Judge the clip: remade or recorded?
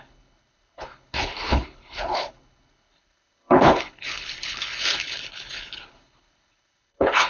remade